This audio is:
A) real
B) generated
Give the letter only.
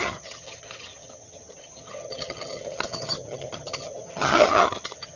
B